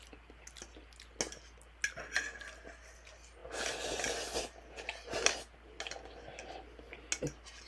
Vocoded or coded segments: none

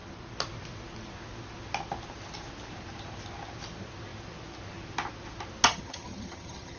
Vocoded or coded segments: 5.7-6.8 (vocoder, HiFi-GAN)